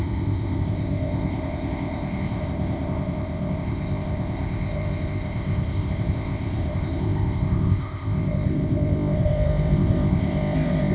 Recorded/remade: remade